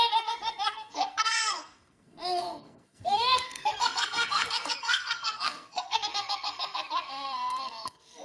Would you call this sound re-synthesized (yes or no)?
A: yes